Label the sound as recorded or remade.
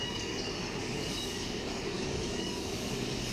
remade